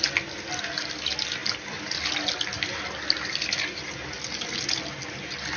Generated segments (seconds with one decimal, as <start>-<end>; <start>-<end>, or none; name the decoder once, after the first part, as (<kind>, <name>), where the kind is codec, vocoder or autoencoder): none